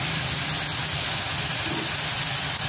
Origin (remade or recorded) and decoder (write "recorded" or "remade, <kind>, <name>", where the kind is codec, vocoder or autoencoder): recorded